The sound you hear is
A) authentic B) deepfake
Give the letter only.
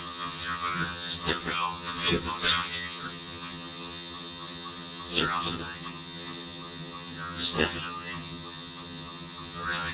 B